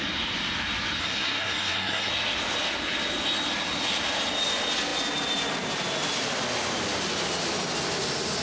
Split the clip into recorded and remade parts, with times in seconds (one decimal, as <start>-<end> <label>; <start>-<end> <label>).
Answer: 0.0-1.0 recorded; 1.0-2.1 remade; 2.1-8.4 recorded